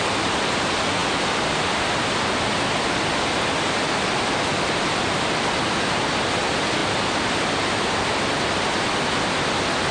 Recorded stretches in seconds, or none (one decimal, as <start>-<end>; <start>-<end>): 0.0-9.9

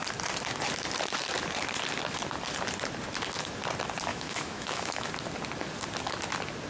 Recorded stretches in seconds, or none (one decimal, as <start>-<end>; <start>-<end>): 0.0-4.1; 5.1-6.7

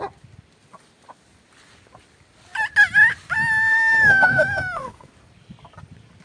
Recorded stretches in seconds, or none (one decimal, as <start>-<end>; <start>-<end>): 0.0-3.7; 5.1-6.2